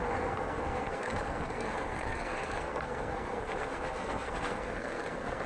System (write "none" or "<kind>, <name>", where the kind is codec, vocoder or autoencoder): codec, SNAC